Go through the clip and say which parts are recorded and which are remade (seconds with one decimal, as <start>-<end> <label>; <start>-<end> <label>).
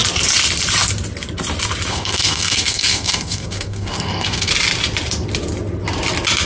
0.0-1.9 recorded; 1.9-4.5 remade; 4.5-6.5 recorded